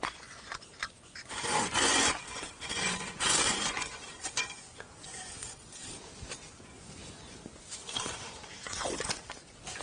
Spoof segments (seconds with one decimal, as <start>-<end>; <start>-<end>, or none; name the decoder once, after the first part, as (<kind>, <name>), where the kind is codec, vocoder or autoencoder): 0.0-5.8 (vocoder, Vocos); 6.5-9.8